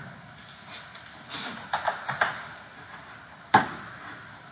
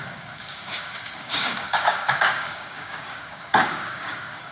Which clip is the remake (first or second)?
second